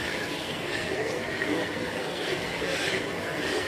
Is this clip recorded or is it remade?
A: remade